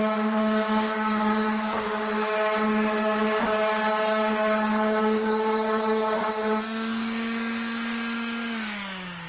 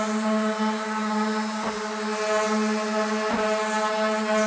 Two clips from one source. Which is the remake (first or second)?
first